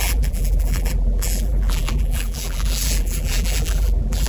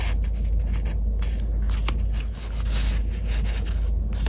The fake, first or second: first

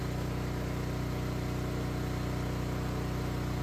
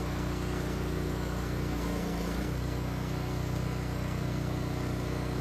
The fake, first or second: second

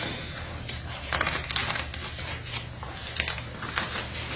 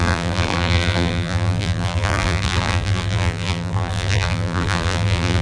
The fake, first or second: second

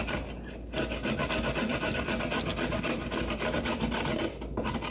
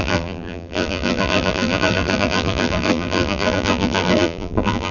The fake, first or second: second